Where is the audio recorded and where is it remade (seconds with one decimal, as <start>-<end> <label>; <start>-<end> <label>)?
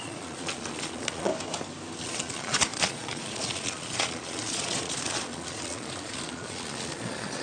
0.0-1.3 remade; 1.3-2.0 recorded; 2.0-7.4 remade